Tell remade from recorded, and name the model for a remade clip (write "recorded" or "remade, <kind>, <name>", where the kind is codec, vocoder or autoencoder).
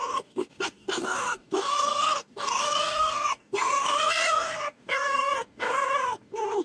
remade, codec, DAC